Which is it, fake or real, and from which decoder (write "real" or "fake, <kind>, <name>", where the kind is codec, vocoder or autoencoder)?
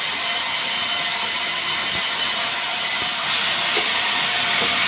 real